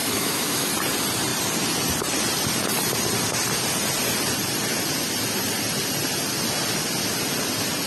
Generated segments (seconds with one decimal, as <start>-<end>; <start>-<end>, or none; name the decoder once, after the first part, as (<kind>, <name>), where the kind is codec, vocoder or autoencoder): 0.0-0.7 (autoencoder, DAC-VAE)